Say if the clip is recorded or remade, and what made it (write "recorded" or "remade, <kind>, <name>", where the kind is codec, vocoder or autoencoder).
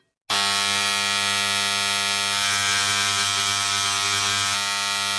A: recorded